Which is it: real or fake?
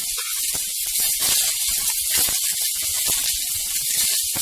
real